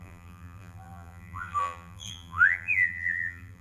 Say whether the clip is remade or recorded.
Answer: remade